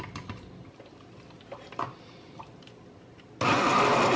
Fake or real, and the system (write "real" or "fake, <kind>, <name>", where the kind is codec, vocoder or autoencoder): real